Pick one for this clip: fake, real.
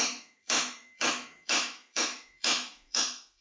fake